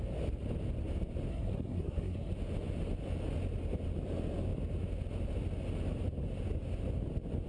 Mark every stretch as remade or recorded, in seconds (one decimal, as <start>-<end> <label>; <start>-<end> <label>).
0.0-1.3 recorded; 1.3-2.3 remade; 2.3-7.5 recorded